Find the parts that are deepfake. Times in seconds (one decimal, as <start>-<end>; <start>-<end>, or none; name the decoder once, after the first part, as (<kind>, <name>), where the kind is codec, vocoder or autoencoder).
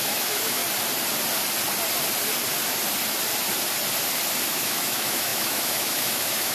0.0-0.6 (autoencoder, DAC-VAE); 4.5-6.5